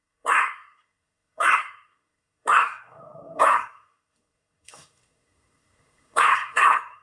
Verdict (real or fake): fake